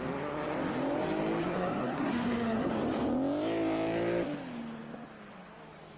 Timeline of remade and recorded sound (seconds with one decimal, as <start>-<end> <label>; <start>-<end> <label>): 0.0-1.4 recorded; 1.4-2.7 remade; 2.7-6.0 recorded